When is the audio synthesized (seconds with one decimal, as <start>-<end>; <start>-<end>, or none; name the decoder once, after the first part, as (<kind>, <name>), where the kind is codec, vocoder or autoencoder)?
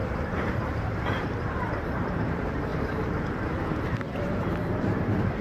0.0-2.7 (vocoder, BigVGAN v2); 4.2-5.4